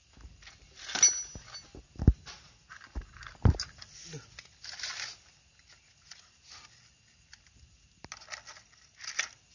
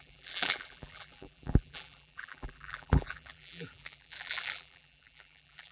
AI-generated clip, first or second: second